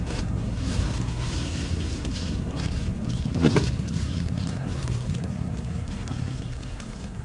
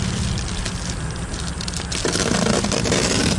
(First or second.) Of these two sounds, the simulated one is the first